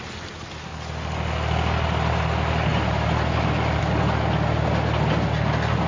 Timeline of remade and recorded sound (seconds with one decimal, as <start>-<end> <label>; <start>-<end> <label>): 0.0-2.7 recorded; 2.7-3.8 remade; 3.8-5.9 recorded